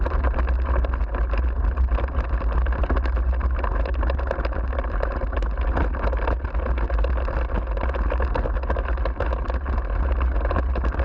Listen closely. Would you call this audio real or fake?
real